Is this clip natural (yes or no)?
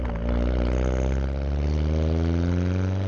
yes